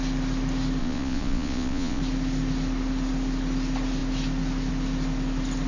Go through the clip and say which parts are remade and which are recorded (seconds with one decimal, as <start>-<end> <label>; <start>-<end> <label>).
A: 0.0-0.8 recorded; 0.8-2.0 remade; 2.0-5.7 recorded